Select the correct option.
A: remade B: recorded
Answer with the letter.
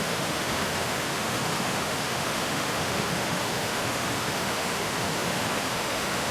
A